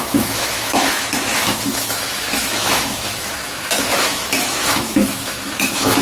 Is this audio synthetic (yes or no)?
yes